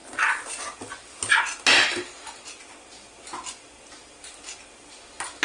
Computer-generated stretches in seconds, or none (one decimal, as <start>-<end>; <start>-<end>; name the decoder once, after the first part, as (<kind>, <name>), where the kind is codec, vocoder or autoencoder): none